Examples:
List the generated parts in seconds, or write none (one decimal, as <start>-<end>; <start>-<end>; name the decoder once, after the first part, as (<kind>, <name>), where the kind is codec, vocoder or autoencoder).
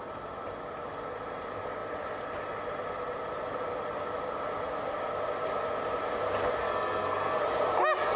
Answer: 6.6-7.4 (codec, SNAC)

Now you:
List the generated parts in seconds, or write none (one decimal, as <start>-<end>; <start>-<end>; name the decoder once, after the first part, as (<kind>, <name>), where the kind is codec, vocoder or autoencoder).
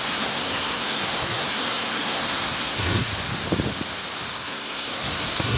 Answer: 0.0-3.1 (codec, SNAC); 4.3-5.6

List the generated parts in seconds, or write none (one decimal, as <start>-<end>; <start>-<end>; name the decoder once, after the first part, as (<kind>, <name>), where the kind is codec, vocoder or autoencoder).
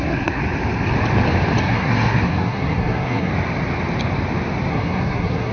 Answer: 0.0-0.4 (codec, SNAC); 1.6-3.3; 4.7-5.5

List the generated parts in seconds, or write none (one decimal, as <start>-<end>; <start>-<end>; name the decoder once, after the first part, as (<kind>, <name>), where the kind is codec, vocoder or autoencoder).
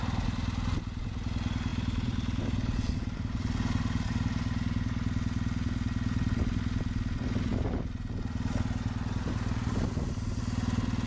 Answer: none